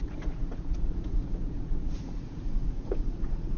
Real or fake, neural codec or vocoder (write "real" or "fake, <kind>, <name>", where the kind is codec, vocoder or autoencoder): fake, vocoder, Vocos